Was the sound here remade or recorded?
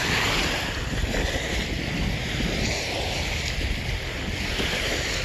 recorded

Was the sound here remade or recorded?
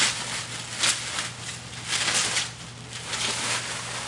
recorded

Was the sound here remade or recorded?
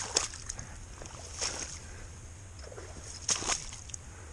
recorded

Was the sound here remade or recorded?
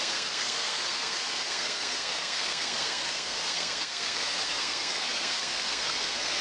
remade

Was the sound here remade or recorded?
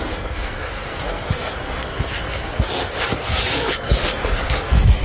remade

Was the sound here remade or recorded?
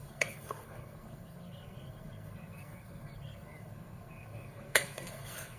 remade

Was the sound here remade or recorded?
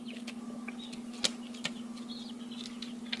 recorded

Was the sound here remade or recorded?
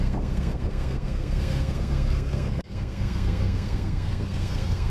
remade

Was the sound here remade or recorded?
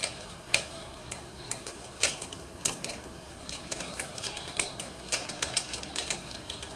remade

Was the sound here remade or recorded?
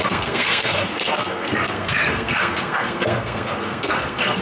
remade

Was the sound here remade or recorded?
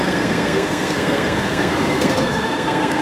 remade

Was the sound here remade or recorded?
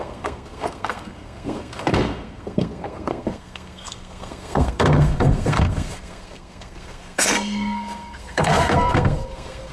remade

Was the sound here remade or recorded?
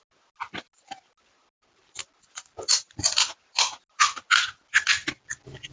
recorded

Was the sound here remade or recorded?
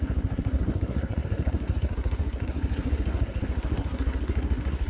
remade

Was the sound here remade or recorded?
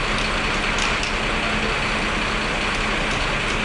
recorded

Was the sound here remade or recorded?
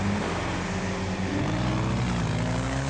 recorded